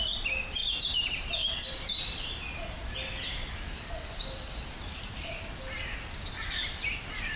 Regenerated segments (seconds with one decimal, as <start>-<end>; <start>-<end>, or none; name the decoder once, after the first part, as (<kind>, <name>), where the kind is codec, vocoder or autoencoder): 0.6-2.4 (vocoder, BigVGAN v2); 2.8-6.9